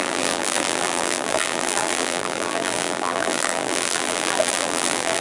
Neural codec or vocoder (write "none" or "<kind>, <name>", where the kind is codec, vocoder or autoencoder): vocoder, BigVGAN v2